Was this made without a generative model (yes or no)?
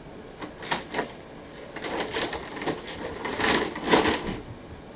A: yes